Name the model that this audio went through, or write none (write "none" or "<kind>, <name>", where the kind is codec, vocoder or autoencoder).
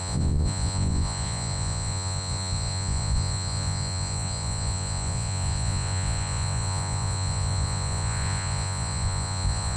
vocoder, Vocos